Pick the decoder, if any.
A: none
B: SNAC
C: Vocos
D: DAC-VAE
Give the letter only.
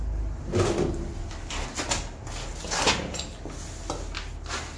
A